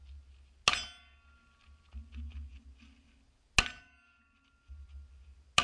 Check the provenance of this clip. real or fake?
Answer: real